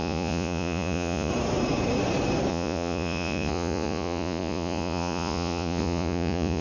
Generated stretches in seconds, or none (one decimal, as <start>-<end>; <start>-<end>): 0.0-1.3; 2.5-6.6